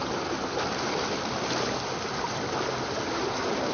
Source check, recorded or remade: recorded